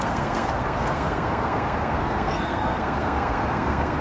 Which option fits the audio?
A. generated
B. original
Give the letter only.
A